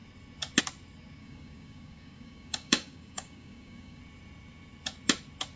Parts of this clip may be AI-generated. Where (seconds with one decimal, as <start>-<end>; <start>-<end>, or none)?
1.2-4.0